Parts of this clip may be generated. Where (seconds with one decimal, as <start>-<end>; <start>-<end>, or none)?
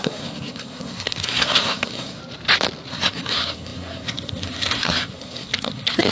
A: 0.0-2.2; 2.9-6.1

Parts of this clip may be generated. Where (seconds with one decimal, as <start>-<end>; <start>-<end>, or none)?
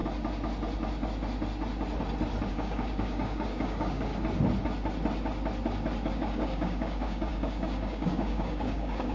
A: 2.5-4.1; 6.1-9.1